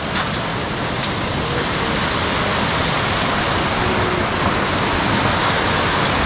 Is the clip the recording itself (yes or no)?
yes